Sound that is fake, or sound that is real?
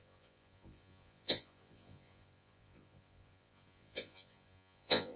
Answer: fake